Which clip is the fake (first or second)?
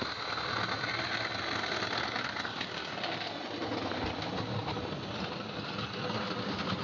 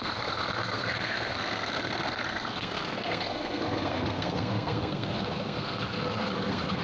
second